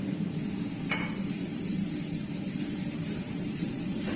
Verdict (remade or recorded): remade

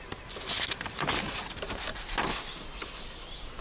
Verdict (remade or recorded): recorded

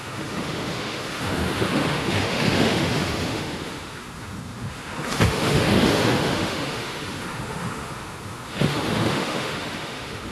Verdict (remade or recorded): remade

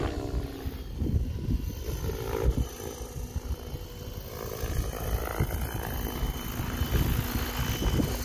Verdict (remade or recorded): recorded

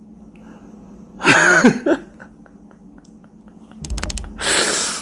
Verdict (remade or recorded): recorded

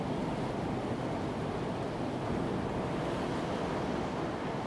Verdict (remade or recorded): recorded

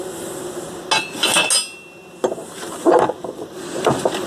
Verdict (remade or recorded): recorded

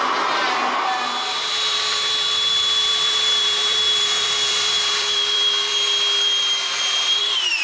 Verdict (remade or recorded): remade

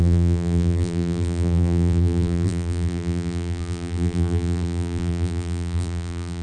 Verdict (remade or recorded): remade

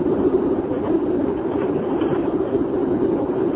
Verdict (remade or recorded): recorded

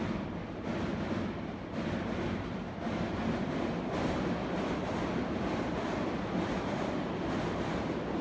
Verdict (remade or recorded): recorded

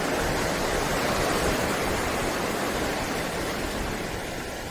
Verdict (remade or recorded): recorded